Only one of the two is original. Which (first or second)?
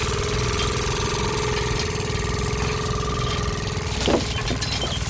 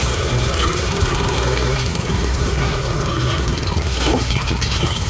first